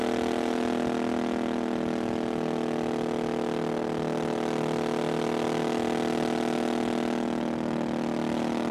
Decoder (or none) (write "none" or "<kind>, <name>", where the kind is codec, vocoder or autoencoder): none